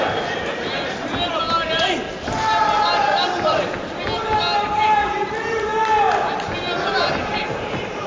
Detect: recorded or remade recorded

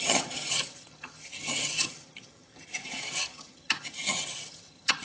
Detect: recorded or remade remade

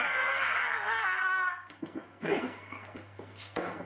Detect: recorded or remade remade